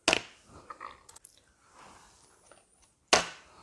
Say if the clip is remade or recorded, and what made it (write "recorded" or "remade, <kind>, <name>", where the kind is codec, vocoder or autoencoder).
recorded